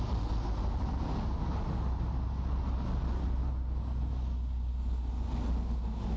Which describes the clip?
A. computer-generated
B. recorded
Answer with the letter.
B